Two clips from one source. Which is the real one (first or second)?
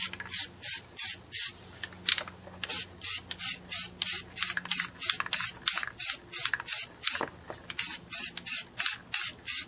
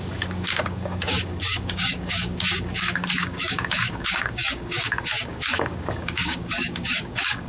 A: first